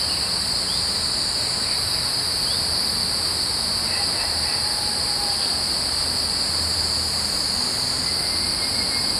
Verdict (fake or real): real